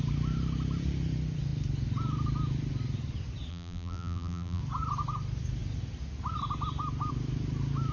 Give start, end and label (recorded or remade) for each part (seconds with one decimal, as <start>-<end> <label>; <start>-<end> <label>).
0.0-3.5 recorded; 3.5-4.6 remade; 4.6-7.9 recorded